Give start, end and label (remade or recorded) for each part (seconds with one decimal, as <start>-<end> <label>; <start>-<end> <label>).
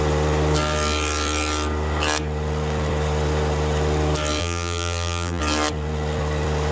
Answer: 0.0-4.4 recorded; 4.4-5.4 remade; 5.4-6.7 recorded